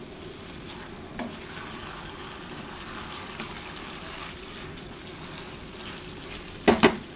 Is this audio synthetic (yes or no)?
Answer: no